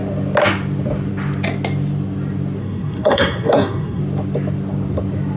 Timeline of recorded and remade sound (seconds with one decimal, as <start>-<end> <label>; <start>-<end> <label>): 0.0-2.6 recorded; 2.6-4.0 remade; 4.0-5.4 recorded

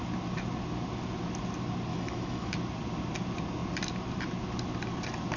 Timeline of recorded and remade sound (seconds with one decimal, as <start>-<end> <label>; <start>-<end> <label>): 0.0-1.9 recorded; 1.9-2.5 remade; 2.5-5.4 recorded

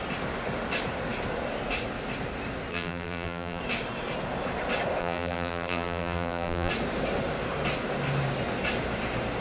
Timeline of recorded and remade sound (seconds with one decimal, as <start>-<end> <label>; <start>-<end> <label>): 0.0-2.7 recorded; 2.7-3.6 remade; 3.6-5.0 recorded; 5.0-6.7 remade; 6.7-9.4 recorded

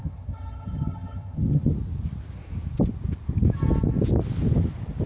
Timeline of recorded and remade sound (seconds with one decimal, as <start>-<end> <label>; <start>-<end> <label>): 0.0-1.7 remade; 1.7-5.1 recorded

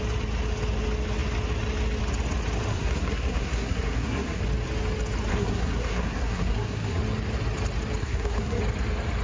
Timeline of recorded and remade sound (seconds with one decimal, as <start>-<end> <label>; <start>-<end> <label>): 0.0-2.7 recorded; 2.7-4.4 remade; 4.4-5.3 recorded; 5.3-7.0 remade; 7.0-8.0 recorded; 8.0-8.6 remade; 8.6-9.2 recorded

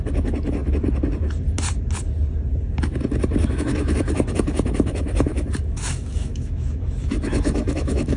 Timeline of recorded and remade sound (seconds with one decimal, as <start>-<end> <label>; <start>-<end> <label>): 0.0-3.4 recorded; 3.4-8.2 remade

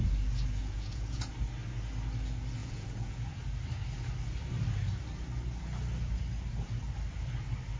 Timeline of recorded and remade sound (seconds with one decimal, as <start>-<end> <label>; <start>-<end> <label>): 0.0-0.6 recorded; 0.6-1.3 remade; 1.3-2.6 recorded; 2.6-3.3 remade; 3.3-7.8 recorded